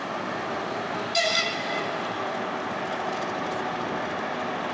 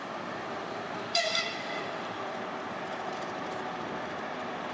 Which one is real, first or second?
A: first